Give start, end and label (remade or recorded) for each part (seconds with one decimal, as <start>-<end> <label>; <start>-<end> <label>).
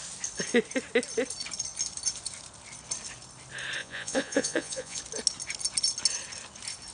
0.0-3.8 recorded; 3.8-5.0 remade; 5.0-6.9 recorded